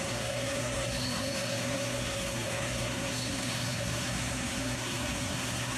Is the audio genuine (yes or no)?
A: no